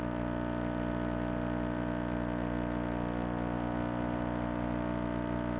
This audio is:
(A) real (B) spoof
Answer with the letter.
A